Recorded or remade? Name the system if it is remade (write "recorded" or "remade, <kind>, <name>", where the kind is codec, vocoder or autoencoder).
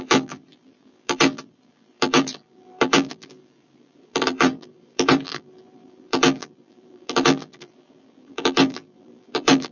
remade, vocoder, BigVGAN v2